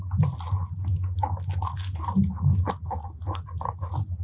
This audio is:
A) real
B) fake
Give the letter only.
A